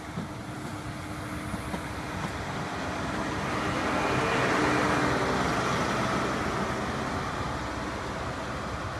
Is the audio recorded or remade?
recorded